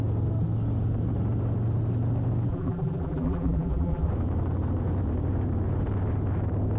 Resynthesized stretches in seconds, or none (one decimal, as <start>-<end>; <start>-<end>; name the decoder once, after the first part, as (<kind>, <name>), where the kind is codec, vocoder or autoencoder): 2.5-4.1 (vocoder, BigVGAN v2)